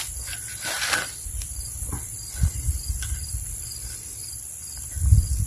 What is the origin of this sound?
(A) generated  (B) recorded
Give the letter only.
A